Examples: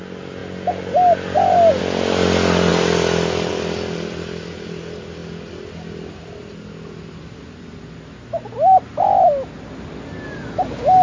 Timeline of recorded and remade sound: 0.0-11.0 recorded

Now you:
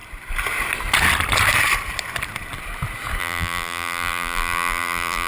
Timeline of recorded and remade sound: 0.0-3.2 recorded; 3.2-5.3 remade

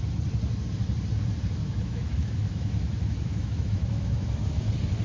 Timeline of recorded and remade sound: 0.0-1.6 recorded; 1.6-4.6 remade; 4.6-5.0 recorded

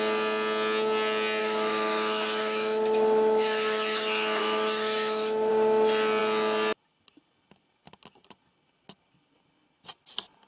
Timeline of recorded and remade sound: 0.0-1.4 recorded; 1.4-5.5 remade; 5.5-10.5 recorded

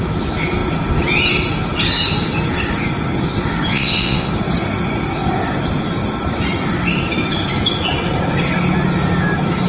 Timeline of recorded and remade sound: 0.0-3.7 recorded; 3.7-4.3 remade; 4.3-9.7 recorded